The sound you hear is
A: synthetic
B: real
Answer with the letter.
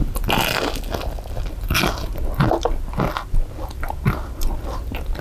B